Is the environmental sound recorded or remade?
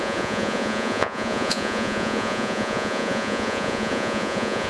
remade